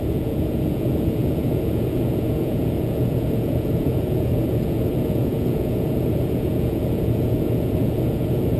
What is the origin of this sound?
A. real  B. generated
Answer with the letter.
B